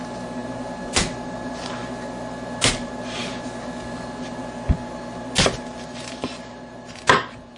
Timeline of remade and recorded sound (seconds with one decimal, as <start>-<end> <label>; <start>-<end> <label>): 0.0-7.6 recorded